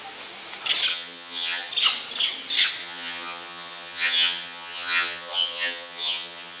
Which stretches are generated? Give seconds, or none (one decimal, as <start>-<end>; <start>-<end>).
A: 0.9-1.7; 2.8-6.6